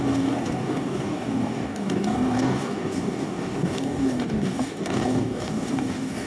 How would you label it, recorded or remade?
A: remade